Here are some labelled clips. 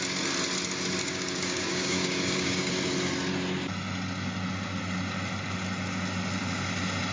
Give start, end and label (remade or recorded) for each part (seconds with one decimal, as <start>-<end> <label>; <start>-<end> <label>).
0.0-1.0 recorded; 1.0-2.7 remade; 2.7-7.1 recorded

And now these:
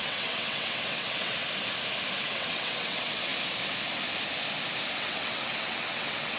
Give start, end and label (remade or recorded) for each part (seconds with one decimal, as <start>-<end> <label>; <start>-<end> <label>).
0.0-1.4 remade; 1.4-2.2 recorded; 2.2-3.3 remade; 3.3-5.0 recorded; 5.0-6.4 remade

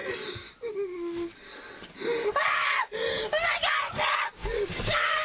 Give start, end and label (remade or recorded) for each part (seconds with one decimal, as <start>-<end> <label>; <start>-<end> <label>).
0.0-4.4 recorded; 4.4-5.2 remade

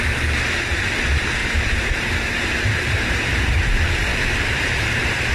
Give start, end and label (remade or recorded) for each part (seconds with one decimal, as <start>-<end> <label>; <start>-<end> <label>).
0.0-1.4 recorded; 1.4-2.8 remade; 2.8-4.1 recorded; 4.1-5.3 remade

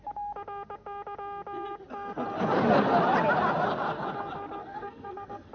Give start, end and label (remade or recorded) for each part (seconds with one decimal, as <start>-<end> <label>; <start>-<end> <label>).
0.0-4.6 recorded; 4.6-5.5 remade

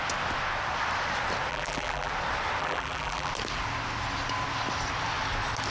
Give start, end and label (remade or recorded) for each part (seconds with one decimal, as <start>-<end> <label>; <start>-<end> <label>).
0.0-1.5 recorded; 1.5-2.1 remade; 2.1-2.6 recorded; 2.6-3.3 remade; 3.3-5.7 recorded